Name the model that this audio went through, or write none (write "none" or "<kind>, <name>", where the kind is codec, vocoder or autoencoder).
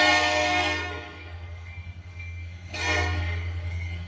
codec, SNAC